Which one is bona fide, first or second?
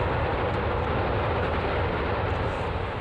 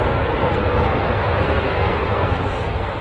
first